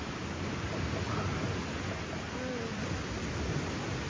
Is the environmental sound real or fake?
real